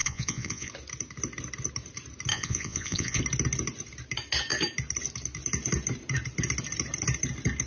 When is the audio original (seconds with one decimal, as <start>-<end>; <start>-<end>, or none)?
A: 0.7-2.3; 3.2-7.7